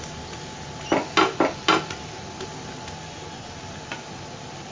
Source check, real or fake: real